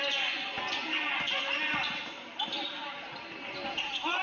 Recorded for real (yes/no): yes